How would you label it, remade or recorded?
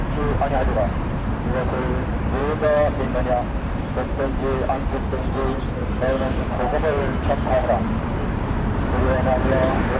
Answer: remade